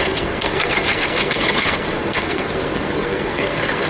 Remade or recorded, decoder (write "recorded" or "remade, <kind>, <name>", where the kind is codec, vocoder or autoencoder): remade, codec, SNAC